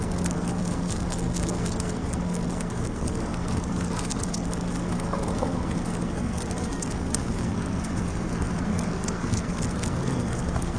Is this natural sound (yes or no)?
no